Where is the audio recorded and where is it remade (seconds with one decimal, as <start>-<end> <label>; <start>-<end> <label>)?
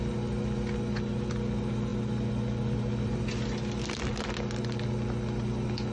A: 0.0-5.9 recorded